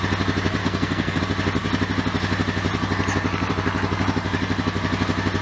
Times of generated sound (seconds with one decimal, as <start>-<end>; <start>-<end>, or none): 0.6-1.2